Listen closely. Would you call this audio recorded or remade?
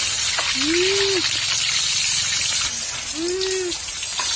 recorded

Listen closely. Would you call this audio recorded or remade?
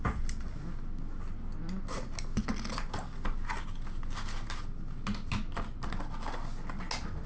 recorded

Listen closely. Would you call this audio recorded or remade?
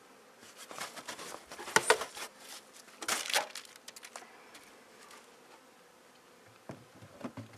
recorded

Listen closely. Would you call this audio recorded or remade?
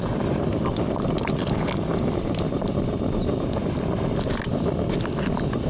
recorded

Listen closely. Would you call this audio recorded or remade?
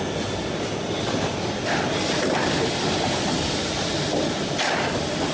recorded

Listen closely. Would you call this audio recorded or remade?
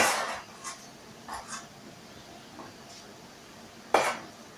recorded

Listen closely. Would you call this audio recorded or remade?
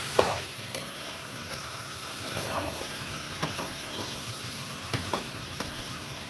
remade